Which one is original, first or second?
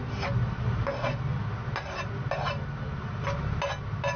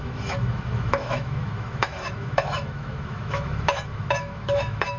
first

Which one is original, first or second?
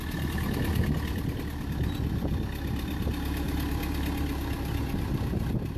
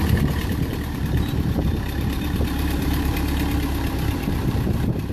first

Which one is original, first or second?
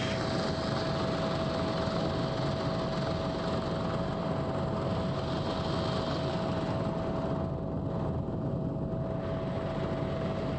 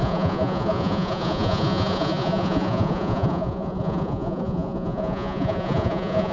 first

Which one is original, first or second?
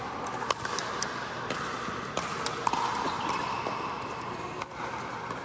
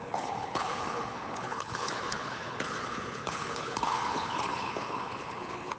first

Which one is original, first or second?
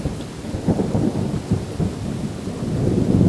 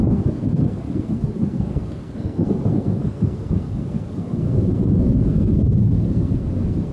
first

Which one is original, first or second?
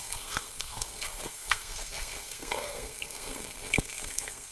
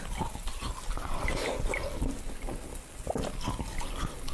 second